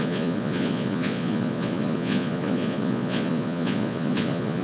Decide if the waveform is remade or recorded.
remade